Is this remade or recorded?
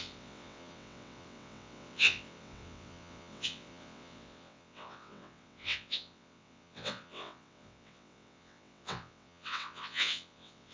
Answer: remade